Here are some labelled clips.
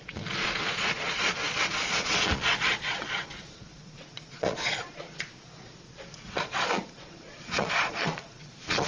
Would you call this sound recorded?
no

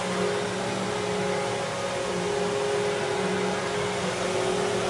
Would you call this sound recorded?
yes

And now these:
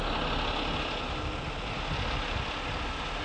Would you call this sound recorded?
yes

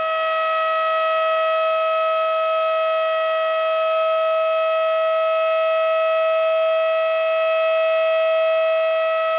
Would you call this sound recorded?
yes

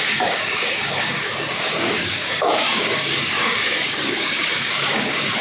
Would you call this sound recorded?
no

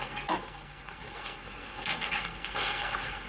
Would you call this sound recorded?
no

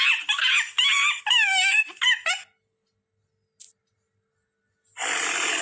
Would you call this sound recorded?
yes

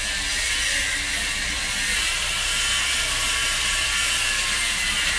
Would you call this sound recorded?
yes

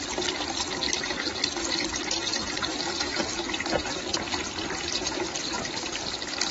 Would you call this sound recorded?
yes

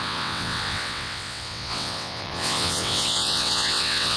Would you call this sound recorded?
no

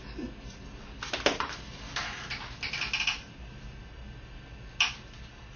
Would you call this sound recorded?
yes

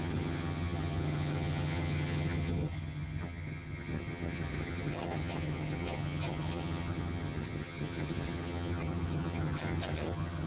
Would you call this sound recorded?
no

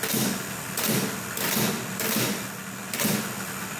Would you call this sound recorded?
yes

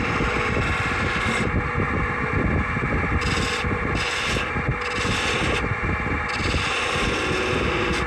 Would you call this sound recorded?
yes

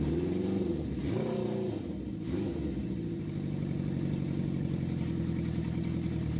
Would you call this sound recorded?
yes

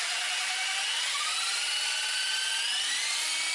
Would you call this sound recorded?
yes